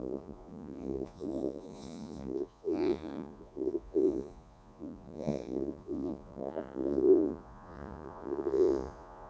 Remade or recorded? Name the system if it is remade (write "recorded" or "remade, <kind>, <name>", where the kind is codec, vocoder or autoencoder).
remade, vocoder, Vocos